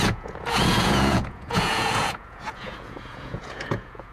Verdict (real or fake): fake